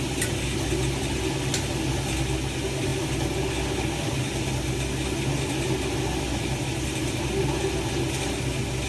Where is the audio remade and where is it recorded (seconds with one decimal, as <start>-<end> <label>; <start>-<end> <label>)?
0.0-8.9 recorded